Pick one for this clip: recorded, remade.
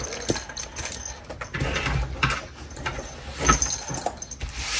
recorded